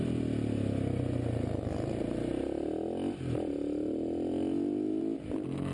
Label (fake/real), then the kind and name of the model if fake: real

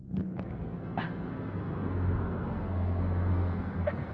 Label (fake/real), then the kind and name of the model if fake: fake, codec, SNAC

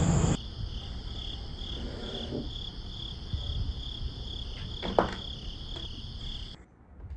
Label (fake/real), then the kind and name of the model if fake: fake, vocoder, BigVGAN v2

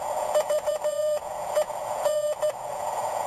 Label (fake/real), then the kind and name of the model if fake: fake, vocoder, Vocos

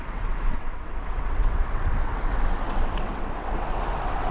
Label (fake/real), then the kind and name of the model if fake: fake, vocoder, WaveNeXt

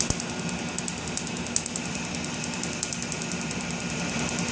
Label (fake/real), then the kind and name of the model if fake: real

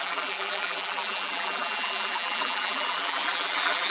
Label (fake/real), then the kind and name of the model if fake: fake, vocoder, BigVGAN v2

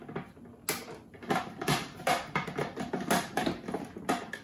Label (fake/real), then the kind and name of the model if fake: real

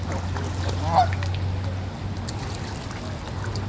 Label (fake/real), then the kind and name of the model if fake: real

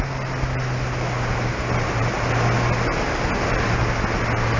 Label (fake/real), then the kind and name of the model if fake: real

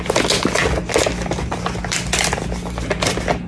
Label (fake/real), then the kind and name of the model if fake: real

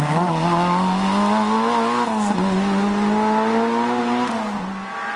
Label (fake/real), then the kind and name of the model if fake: real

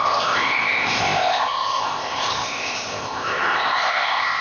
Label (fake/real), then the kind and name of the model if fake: fake, codec, ZipCodec